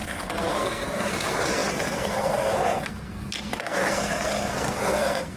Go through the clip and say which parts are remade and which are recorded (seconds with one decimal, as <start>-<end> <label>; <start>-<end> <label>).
0.0-5.4 remade